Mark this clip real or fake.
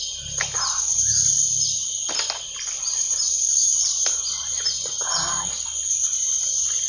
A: real